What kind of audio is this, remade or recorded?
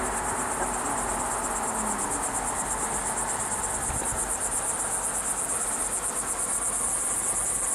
recorded